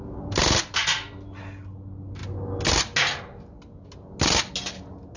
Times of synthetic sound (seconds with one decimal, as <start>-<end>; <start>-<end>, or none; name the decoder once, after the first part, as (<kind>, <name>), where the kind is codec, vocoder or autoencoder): none